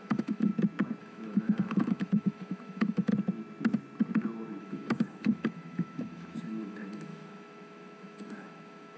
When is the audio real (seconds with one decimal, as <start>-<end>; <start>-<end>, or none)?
0.5-1.0; 3.1-4.6